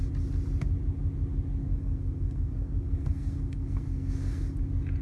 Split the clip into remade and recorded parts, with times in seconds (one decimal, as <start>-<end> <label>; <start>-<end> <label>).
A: 0.0-1.6 recorded; 1.6-4.6 remade; 4.6-5.0 recorded